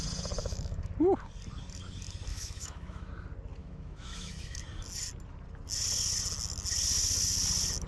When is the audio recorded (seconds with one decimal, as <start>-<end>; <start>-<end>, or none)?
0.0-0.4; 0.9-2.3; 3.1-3.6; 4.6-7.9